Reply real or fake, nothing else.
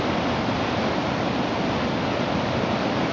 real